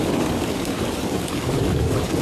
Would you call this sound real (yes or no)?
no